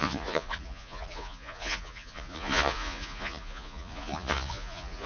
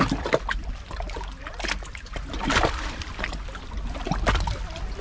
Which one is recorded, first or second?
second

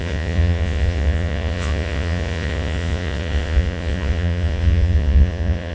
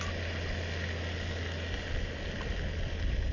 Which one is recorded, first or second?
second